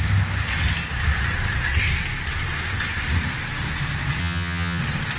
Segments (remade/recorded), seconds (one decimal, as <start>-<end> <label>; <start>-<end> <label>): 0.0-4.2 recorded; 4.2-4.8 remade; 4.8-5.2 recorded